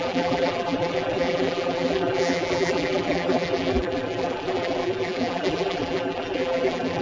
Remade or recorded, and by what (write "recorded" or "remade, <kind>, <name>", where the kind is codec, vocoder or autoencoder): remade, vocoder, BigVGAN v2